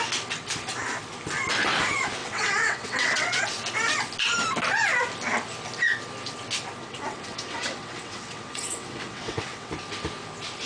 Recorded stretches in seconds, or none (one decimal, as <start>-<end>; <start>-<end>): 0.0-2.2; 3.4-6.8; 9.7-10.7

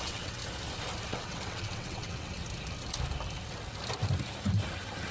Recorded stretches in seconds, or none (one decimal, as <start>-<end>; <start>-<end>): 0.4-1.1; 2.4-5.1